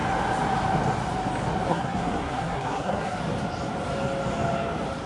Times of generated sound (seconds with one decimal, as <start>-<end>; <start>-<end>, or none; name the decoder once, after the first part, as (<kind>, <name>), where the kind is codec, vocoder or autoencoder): 1.7-3.2 (codec, SNAC)